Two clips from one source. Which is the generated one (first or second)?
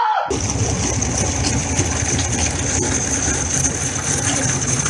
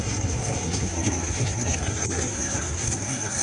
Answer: second